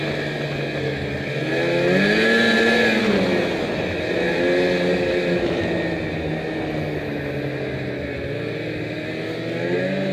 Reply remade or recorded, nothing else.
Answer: recorded